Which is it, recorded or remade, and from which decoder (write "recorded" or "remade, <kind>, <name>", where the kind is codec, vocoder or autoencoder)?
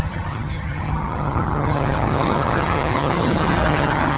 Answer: remade, vocoder, HiFi-GAN